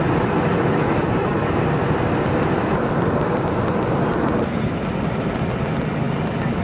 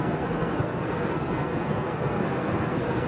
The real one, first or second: first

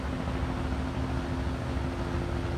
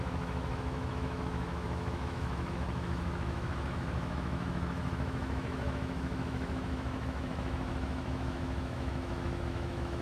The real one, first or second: first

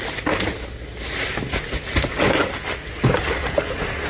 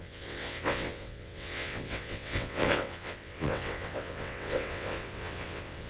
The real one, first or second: first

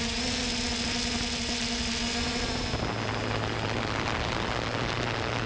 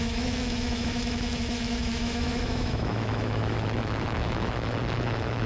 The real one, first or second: first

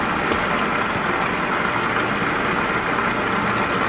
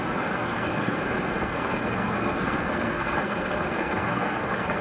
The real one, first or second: first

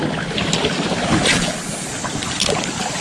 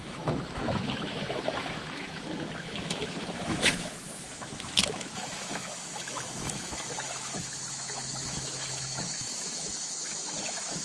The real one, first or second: first